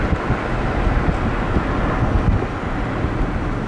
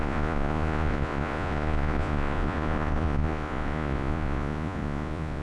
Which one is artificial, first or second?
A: second